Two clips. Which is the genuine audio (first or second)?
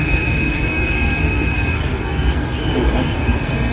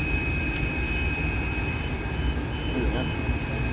second